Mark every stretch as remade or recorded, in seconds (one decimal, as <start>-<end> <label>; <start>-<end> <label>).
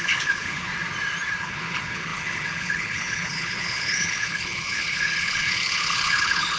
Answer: 0.0-0.7 remade; 0.7-1.4 recorded; 1.4-6.6 remade